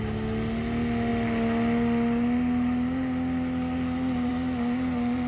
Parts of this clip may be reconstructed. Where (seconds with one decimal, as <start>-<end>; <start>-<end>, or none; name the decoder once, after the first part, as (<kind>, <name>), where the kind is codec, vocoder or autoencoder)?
none